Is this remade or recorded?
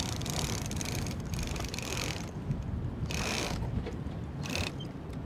recorded